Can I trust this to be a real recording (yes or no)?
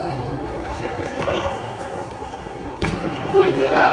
no